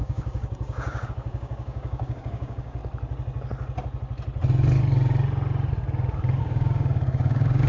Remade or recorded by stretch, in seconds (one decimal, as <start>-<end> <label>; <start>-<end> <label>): 0.0-2.8 remade; 2.8-6.4 recorded; 6.4-7.7 remade